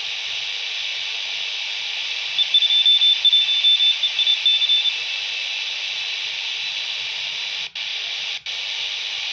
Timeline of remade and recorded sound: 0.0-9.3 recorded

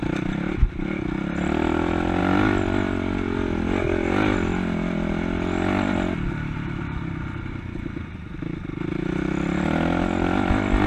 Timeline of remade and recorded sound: 0.0-10.9 recorded

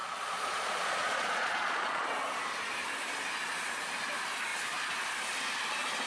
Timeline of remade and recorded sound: 0.0-2.1 remade; 2.1-6.1 recorded

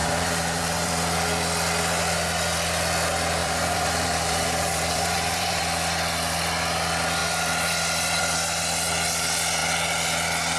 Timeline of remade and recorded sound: 0.0-0.9 remade; 0.9-3.4 recorded; 3.4-5.6 remade; 5.6-10.6 recorded